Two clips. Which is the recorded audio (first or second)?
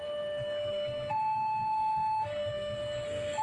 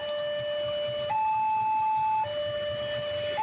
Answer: second